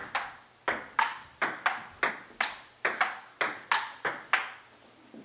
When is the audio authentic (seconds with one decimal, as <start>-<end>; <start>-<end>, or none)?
0.0-5.2